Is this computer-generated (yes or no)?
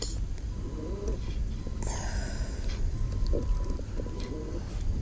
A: no